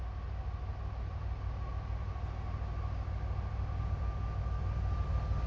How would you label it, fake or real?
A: real